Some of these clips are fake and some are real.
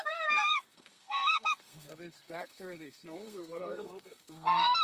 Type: fake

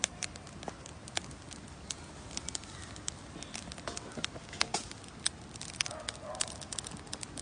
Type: real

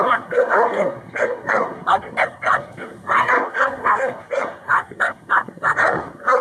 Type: fake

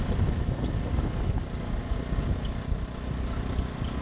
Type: real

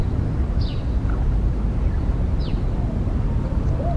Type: real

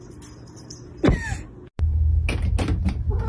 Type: real